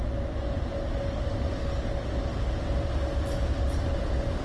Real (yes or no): yes